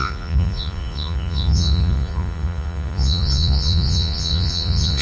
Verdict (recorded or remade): remade